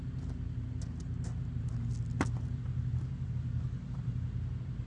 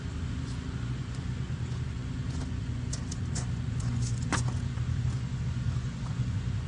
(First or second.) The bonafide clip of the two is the first